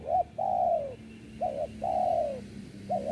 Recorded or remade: recorded